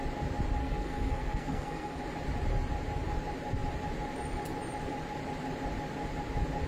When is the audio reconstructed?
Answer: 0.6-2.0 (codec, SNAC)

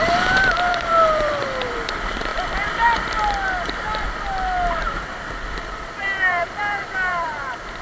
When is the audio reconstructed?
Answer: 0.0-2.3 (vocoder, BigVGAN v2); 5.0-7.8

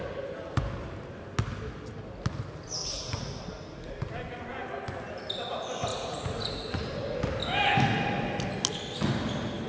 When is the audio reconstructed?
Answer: 2.8-3.4 (vocoder, Vocos); 5.9-6.8

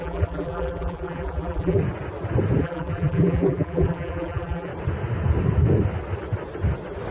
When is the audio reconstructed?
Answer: 0.0-1.8 (vocoder, BigVGAN v2); 2.6-4.7

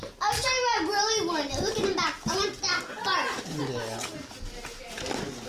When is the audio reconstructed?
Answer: none